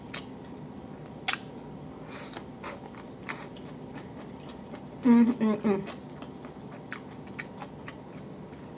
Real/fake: real